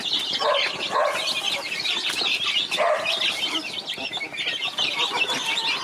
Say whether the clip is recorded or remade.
recorded